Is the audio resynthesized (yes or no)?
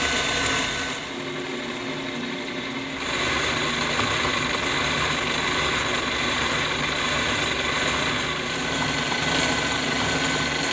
no